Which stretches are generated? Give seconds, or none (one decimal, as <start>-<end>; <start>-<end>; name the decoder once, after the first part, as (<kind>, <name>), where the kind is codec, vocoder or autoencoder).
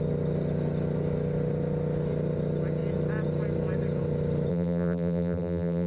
4.5-5.9 (vocoder, BigVGAN v2)